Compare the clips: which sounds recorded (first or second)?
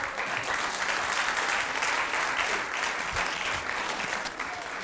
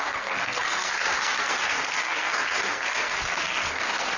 first